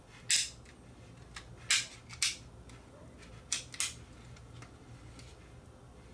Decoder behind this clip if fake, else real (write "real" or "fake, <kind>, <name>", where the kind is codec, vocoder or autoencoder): real